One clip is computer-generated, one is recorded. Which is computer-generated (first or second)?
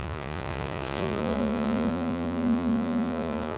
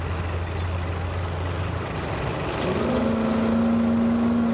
first